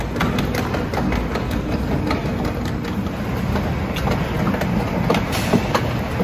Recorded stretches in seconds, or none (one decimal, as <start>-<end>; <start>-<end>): 0.0-6.2